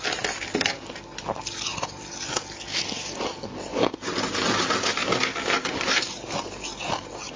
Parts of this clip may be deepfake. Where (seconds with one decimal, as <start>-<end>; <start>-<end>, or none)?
none